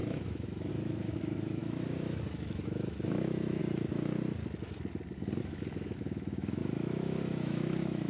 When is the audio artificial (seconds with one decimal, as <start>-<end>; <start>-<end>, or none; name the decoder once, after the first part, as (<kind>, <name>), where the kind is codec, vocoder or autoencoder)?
0.0-3.6 (autoencoder, DAC-VAE); 5.4-8.1